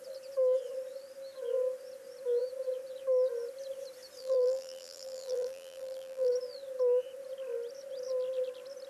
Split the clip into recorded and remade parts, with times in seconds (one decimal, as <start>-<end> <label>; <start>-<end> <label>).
0.0-4.2 recorded; 4.2-6.3 remade; 6.3-8.9 recorded